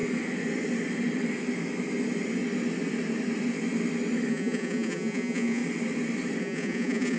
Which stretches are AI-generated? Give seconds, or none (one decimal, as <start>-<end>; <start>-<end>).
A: 4.3-5.6; 6.4-7.2